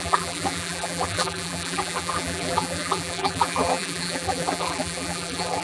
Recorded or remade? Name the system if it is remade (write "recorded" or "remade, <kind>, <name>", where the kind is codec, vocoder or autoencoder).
remade, vocoder, BigVGAN v2